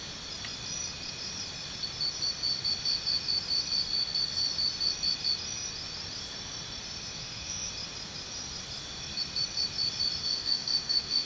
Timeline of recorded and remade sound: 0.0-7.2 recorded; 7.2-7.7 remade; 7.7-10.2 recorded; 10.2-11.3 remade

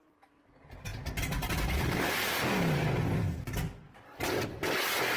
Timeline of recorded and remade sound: 0.0-5.2 recorded